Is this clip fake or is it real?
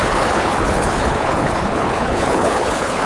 fake